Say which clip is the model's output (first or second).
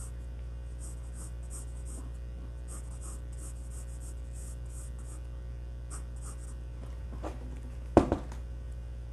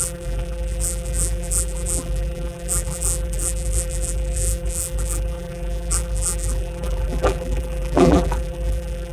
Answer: second